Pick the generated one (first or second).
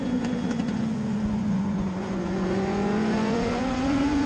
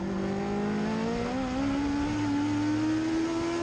first